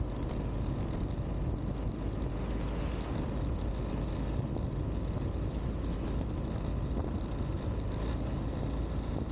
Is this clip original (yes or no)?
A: yes